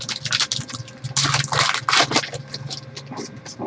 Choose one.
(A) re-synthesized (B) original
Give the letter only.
B